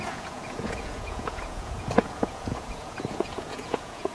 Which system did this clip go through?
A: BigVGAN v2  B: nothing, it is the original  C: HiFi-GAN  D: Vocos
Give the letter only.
D